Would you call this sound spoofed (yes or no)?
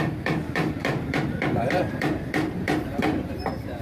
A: yes